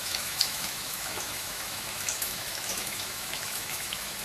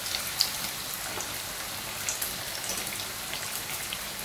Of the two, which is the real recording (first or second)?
second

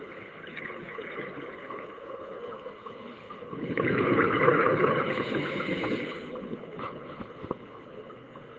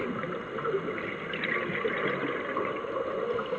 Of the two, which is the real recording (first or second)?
second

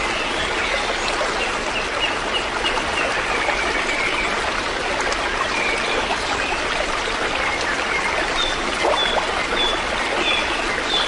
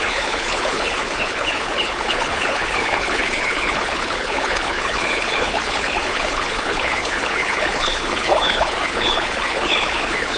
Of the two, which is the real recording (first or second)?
first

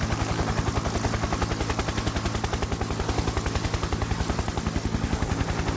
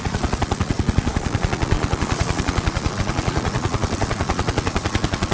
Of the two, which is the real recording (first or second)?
first